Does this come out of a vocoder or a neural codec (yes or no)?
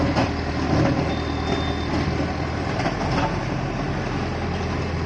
no